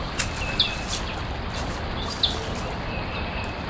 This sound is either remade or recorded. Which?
recorded